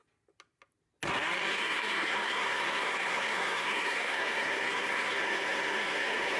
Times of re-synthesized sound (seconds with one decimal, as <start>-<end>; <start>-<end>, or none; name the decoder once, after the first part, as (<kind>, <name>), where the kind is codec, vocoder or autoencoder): 1.5-6.4 (codec, SNAC)